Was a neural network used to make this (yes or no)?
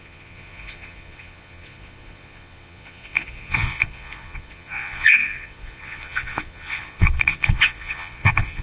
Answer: yes